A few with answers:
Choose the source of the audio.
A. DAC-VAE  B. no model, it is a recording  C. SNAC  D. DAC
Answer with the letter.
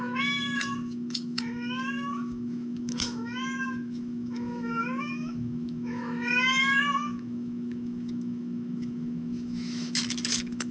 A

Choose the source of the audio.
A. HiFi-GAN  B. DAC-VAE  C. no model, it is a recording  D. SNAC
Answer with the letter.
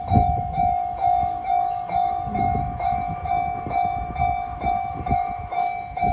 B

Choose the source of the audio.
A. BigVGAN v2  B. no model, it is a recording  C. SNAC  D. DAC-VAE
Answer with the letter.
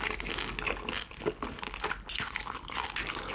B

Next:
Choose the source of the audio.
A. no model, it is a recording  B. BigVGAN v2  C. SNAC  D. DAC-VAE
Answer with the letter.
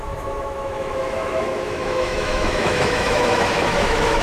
D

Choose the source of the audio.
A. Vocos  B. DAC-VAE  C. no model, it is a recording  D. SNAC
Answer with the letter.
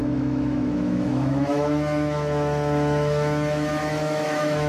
B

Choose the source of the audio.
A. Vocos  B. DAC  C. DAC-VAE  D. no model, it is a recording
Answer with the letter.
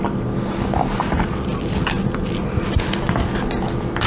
D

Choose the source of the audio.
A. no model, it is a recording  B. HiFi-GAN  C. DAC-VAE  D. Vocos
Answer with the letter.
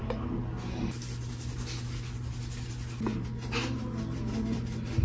A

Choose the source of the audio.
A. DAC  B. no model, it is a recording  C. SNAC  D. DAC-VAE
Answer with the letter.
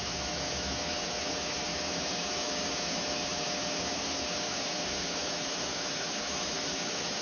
D